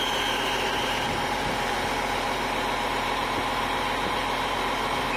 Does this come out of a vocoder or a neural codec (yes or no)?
no